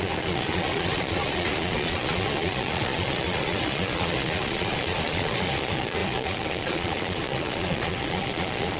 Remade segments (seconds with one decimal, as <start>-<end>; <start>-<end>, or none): 0.0-8.8